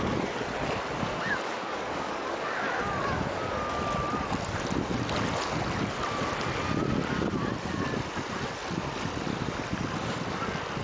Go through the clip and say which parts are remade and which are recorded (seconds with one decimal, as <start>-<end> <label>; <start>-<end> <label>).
0.0-1.1 recorded; 1.1-3.8 remade; 3.8-10.8 recorded